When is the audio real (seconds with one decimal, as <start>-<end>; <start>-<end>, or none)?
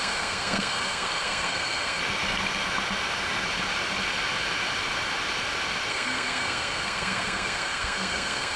2.0-5.9